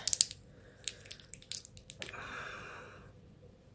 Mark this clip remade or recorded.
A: recorded